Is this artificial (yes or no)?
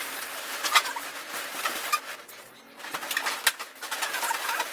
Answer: no